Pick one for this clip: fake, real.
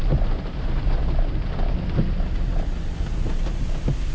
real